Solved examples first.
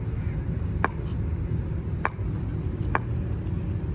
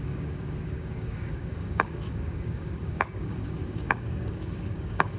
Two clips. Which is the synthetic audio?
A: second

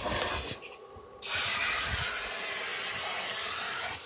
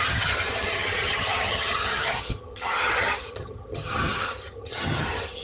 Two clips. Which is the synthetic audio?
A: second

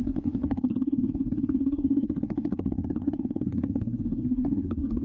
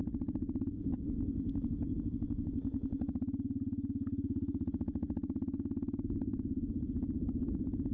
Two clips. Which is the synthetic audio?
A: first